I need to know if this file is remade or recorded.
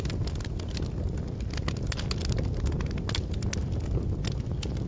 recorded